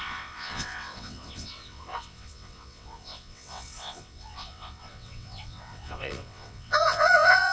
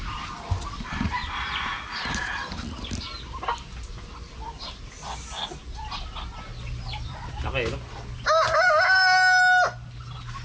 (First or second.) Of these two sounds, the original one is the second